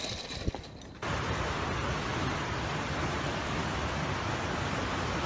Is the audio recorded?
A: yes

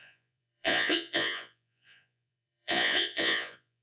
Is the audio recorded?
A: no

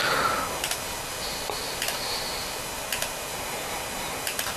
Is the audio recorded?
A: yes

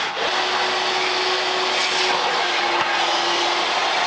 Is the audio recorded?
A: yes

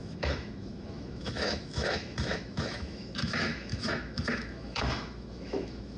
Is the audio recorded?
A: no